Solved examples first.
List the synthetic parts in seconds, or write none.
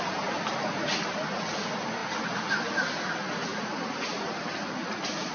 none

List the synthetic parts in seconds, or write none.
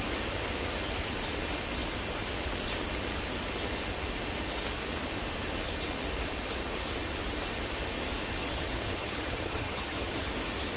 8.4-10.3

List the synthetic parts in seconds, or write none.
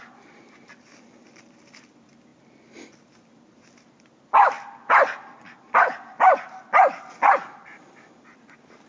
none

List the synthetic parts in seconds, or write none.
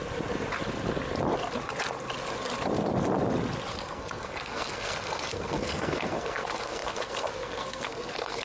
3.7-8.4